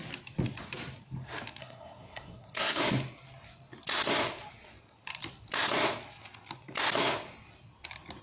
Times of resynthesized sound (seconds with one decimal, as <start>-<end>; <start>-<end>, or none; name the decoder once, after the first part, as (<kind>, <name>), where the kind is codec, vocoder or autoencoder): 1.6-2.8 (codec, SNAC)